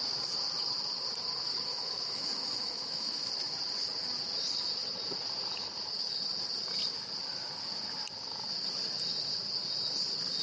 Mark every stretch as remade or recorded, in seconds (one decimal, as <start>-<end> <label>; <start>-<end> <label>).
0.0-1.7 recorded; 1.7-3.3 remade; 3.3-10.4 recorded